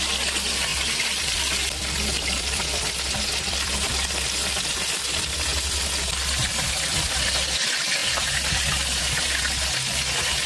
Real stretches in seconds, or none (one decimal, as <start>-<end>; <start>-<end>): 0.0-0.7; 4.5-10.5